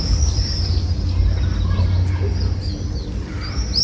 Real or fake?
real